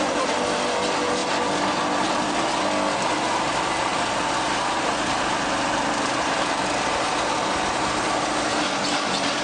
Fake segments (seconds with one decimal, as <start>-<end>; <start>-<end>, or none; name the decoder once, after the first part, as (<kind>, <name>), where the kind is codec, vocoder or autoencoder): none